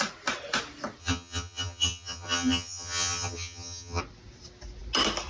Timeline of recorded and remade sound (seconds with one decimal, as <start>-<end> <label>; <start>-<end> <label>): 0.0-1.0 recorded; 1.0-4.0 remade; 4.0-5.3 recorded

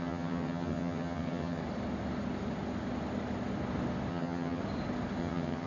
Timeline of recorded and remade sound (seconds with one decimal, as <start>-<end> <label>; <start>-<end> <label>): 0.0-1.6 remade; 1.6-4.1 recorded; 4.1-4.6 remade; 4.6-5.2 recorded; 5.2-5.7 remade

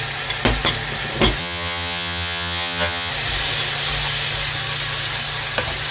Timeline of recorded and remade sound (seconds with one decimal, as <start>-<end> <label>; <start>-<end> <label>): 0.0-1.4 recorded; 1.4-3.1 remade; 3.1-5.9 recorded

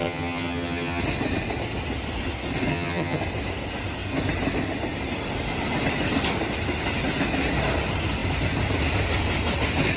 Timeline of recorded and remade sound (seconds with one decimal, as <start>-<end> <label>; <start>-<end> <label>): 0.0-1.0 remade; 1.0-2.7 recorded; 2.7-3.2 remade; 3.2-10.0 recorded

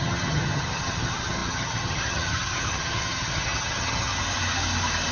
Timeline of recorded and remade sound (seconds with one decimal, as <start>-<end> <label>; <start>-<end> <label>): 0.0-4.1 remade; 4.1-5.1 recorded

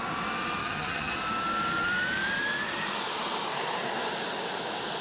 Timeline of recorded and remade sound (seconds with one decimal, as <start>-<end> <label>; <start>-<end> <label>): 0.0-0.6 recorded; 0.6-1.1 remade; 1.1-5.0 recorded